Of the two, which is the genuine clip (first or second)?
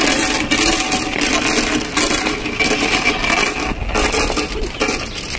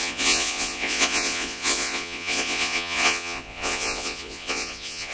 first